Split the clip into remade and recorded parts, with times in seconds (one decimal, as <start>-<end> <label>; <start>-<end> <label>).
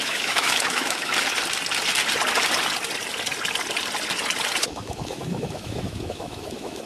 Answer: 0.0-1.1 remade; 1.1-4.6 recorded; 4.6-6.9 remade